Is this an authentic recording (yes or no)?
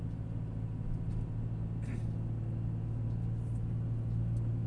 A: yes